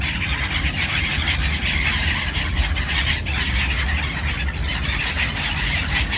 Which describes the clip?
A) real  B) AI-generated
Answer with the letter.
A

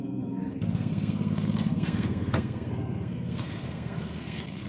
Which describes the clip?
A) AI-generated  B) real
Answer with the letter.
A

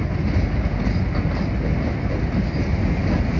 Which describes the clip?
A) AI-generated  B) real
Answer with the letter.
B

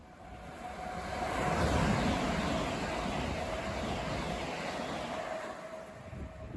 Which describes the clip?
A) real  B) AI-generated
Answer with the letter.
A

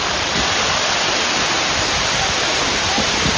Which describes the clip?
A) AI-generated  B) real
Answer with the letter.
A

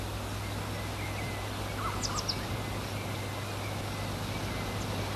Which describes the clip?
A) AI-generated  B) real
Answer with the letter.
B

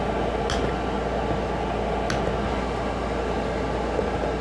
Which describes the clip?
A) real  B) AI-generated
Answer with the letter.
A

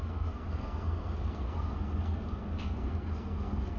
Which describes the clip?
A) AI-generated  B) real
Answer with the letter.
A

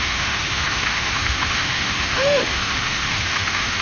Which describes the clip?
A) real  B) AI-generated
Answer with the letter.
B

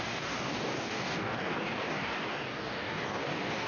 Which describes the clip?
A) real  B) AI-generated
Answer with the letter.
B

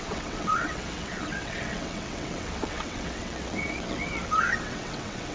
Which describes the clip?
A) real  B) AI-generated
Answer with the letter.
B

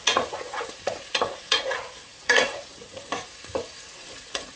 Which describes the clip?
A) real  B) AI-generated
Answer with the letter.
B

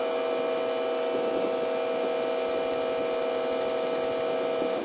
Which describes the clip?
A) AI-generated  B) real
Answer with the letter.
B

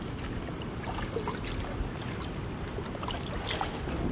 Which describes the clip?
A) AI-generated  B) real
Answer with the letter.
B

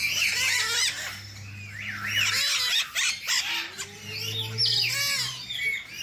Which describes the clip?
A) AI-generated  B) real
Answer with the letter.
B